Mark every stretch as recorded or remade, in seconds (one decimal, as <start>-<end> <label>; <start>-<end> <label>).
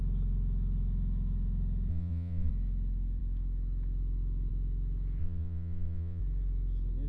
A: 0.0-1.9 recorded; 1.9-2.5 remade; 2.5-5.2 recorded; 5.2-6.2 remade; 6.2-7.1 recorded